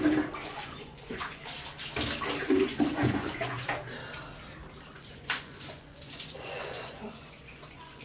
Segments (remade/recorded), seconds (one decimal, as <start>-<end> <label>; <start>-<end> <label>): 0.0-0.4 recorded; 0.4-1.4 remade; 1.4-2.4 recorded; 2.4-3.7 remade; 3.7-4.9 recorded; 4.9-8.0 remade